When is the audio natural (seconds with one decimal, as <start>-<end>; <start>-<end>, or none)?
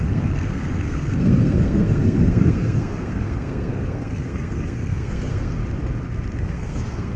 5.6-6.4